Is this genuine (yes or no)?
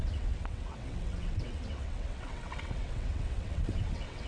no